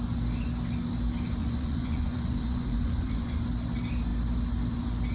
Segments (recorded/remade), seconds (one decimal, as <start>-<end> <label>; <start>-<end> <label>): 0.0-1.4 recorded; 1.4-3.4 remade; 3.4-5.1 recorded